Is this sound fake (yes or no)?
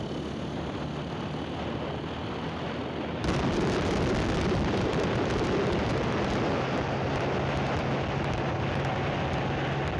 no